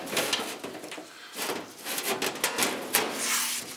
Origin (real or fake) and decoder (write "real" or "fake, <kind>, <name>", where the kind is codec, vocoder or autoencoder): real